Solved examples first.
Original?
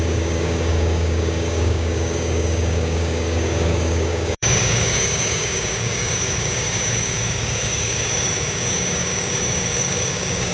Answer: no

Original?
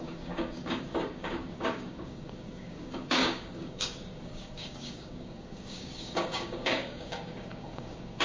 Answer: no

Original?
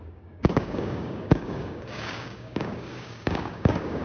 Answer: no